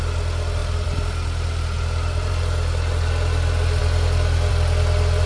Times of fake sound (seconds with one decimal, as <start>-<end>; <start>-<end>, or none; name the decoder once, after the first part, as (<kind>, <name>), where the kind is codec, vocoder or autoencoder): none